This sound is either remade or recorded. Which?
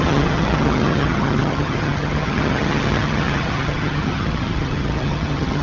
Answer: remade